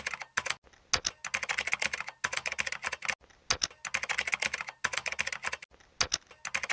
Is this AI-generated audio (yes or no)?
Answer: no